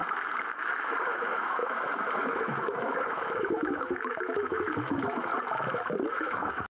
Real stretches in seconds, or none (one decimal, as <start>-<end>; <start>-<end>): 0.0-0.6; 5.3-6.1